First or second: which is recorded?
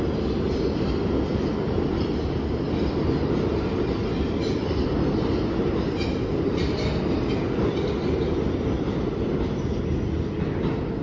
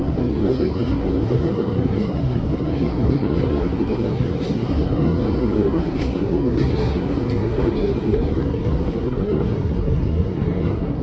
first